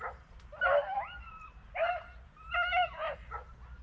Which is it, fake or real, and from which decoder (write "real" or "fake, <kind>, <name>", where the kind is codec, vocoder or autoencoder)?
real